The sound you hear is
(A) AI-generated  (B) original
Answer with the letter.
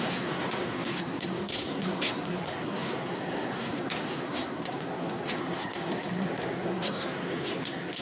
A